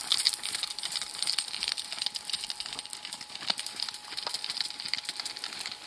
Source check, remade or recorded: recorded